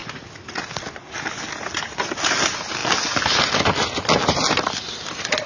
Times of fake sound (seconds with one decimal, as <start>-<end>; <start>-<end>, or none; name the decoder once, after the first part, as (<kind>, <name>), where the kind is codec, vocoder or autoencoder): none